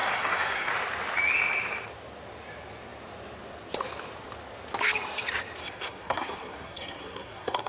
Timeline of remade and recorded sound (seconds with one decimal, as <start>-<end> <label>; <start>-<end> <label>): 0.0-0.7 remade; 0.7-5.6 recorded; 5.6-7.7 remade